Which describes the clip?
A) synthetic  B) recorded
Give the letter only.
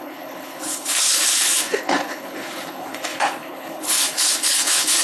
A